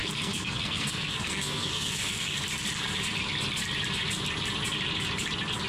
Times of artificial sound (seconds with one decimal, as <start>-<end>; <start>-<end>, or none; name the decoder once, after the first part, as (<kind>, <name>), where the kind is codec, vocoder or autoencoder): 0.0-2.4 (codec, SNAC)